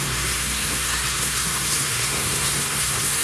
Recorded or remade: remade